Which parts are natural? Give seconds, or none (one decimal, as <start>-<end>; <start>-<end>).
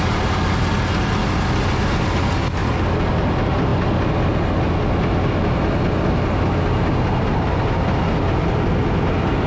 0.0-9.5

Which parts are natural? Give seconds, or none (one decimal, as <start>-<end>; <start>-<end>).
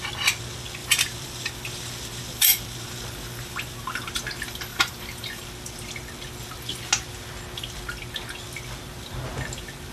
0.0-0.8; 4.1-4.7; 5.4-9.9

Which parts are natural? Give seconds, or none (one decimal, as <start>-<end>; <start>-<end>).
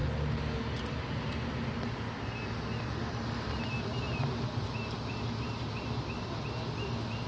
0.0-7.3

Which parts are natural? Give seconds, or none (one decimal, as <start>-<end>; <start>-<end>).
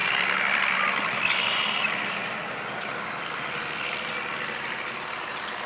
0.0-5.7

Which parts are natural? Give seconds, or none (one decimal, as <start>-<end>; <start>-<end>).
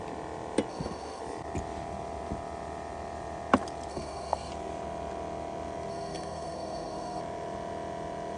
0.0-0.7; 1.2-3.9; 4.5-5.9; 7.2-8.4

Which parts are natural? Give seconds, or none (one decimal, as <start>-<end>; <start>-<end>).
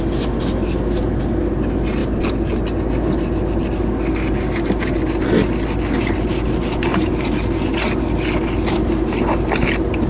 0.0-10.1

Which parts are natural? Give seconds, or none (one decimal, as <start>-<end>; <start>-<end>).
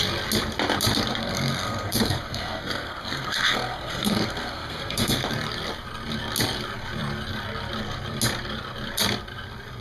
0.0-1.2; 5.2-9.8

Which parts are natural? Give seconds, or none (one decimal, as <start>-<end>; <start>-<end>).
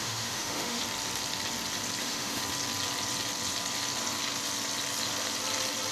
0.8-2.0; 2.4-5.9